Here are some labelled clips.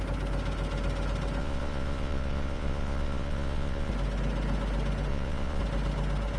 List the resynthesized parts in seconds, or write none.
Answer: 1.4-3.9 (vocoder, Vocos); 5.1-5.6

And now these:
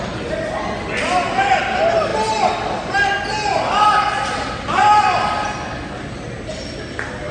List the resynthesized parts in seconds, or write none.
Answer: none

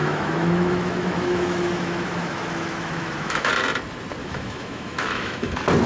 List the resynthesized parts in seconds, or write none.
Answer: 0.0-3.5 (autoencoder, DAC-VAE); 4.2-5.5

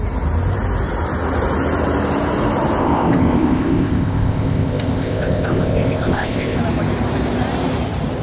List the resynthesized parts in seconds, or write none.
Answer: 2.8-6.6 (codec, ZipCodec)

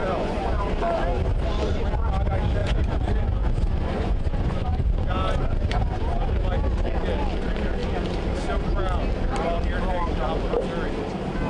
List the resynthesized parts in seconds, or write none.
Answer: 0.0-0.6 (vocoder, Vocos); 2.6-6.3

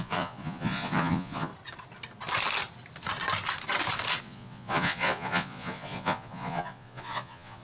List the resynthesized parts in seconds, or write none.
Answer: 0.0-1.5 (vocoder, Vocos); 4.2-7.6

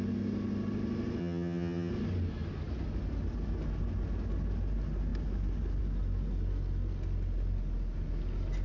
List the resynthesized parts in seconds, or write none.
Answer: 1.2-1.9 (vocoder, HiFi-GAN)